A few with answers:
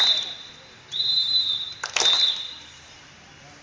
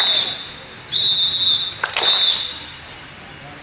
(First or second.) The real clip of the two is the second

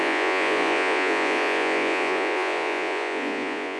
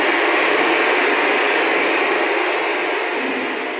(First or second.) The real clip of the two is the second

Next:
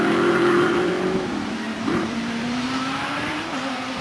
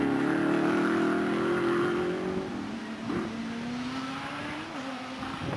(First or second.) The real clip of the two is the second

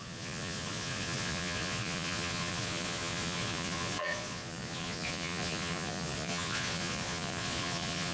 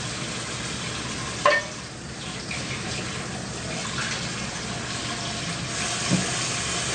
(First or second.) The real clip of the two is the second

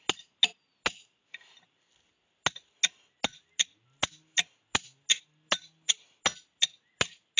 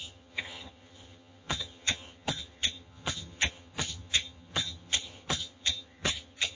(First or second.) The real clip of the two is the first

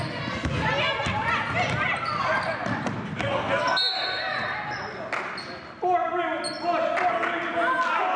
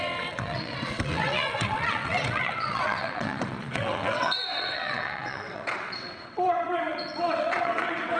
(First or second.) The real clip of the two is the first